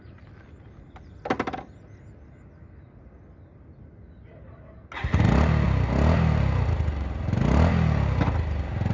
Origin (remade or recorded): recorded